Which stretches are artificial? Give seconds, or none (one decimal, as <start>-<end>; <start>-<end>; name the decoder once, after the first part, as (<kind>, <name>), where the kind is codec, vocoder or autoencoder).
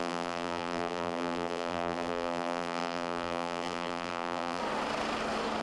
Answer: 0.0-4.6 (vocoder, BigVGAN v2)